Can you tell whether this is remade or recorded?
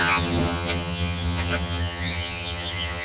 remade